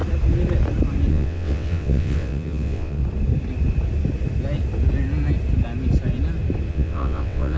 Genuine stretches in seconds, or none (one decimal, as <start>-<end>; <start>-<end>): 0.0-1.1; 3.0-6.7